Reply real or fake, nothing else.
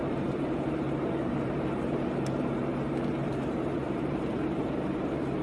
fake